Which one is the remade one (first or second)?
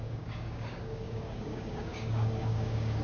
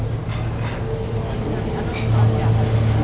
first